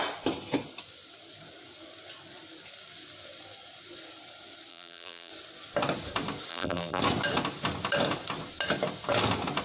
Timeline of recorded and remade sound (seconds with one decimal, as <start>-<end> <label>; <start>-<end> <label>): 0.0-4.7 recorded; 4.7-5.3 remade; 5.3-6.5 recorded; 6.5-7.0 remade; 7.0-9.6 recorded